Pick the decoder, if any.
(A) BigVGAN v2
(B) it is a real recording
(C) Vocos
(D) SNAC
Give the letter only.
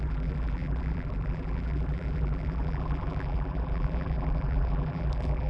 A